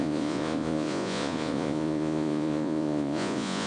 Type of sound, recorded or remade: remade